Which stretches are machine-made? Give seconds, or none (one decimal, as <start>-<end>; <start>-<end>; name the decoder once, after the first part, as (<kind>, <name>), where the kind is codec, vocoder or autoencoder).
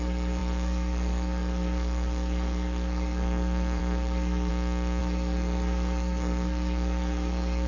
0.0-4.5 (codec, SNAC); 5.0-7.7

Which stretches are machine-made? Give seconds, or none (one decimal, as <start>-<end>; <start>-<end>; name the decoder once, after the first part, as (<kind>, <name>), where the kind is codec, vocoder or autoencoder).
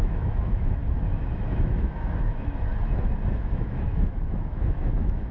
0.0-2.7 (autoencoder, DAC-VAE); 3.3-5.3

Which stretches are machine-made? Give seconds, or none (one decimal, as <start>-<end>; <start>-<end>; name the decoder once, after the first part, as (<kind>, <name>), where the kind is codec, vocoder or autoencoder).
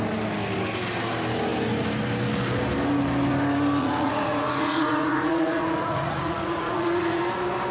3.8-7.2 (vocoder, Vocos)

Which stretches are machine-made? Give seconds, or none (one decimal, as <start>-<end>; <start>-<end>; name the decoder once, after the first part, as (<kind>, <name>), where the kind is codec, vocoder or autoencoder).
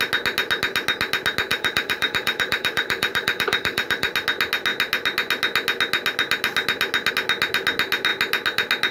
1.5-4.1 (vocoder, BigVGAN v2)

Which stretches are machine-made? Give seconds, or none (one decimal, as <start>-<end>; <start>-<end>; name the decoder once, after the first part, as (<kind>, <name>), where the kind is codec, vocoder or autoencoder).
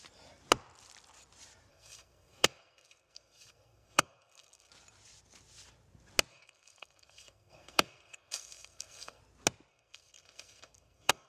1.7-4.7 (codec, SNAC); 6.3-9.2; 9.7-11.3